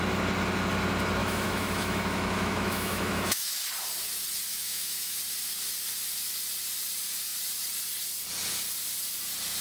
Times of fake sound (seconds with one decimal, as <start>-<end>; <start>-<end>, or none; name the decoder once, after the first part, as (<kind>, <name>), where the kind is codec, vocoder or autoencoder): 1.2-3.6 (autoencoder, DAC-VAE); 4.5-5.2